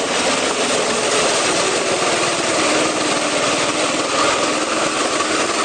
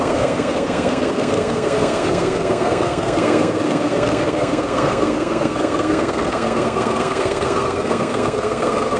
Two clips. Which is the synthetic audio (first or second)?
second